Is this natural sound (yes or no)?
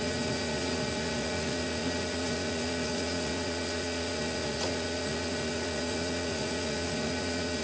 no